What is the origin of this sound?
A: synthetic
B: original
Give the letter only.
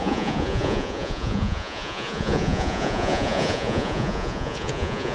A